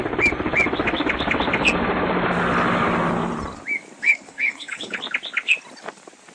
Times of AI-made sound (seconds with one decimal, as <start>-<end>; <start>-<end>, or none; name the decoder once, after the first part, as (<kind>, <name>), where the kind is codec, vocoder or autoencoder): 4.0-5.0 (codec, HILCodec)